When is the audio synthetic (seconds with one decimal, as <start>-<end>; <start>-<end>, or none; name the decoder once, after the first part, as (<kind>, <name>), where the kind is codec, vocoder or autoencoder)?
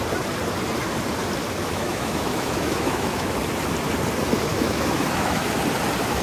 1.6-3.4 (autoencoder, DAC-VAE); 4.5-5.6